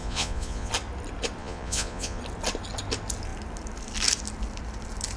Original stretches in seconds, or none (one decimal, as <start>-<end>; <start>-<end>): 0.7-1.4; 2.2-5.2